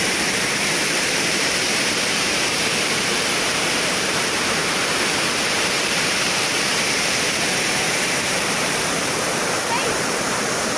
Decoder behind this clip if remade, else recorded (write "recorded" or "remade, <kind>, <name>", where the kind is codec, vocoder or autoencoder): remade, vocoder, BigVGAN v2